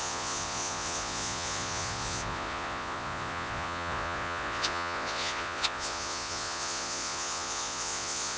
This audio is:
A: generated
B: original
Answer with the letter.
A